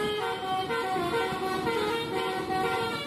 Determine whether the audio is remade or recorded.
recorded